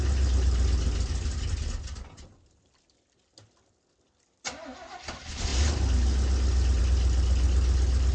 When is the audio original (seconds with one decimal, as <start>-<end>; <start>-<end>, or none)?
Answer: 0.0-8.1